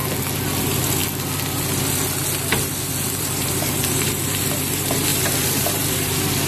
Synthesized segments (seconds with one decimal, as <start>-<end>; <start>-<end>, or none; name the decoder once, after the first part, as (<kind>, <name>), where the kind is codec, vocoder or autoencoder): 0.6-1.0 (vocoder, BigVGAN v2); 3.2-6.5